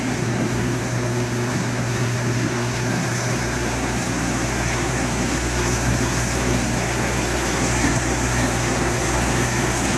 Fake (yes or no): yes